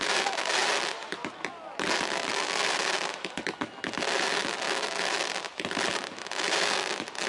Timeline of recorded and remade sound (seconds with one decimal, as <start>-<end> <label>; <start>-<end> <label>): 0.0-7.3 recorded